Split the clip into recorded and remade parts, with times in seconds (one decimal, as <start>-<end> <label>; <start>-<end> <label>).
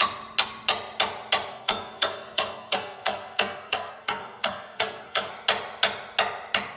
0.0-1.5 recorded; 1.5-5.3 remade; 5.3-6.8 recorded